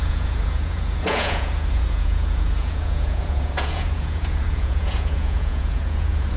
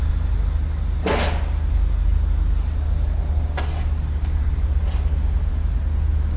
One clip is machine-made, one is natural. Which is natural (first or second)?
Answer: second